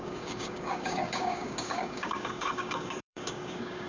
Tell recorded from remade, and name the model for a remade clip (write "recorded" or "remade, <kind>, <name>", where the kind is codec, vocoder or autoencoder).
remade, codec, DAC